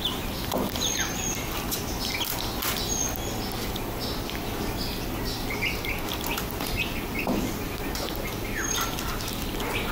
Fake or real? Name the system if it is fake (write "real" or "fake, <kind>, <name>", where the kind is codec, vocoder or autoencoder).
real